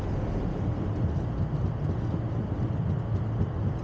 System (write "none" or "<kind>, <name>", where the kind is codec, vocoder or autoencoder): none